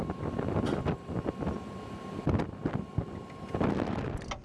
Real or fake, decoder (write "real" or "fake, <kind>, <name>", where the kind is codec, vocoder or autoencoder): real